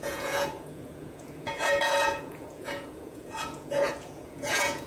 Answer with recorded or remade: remade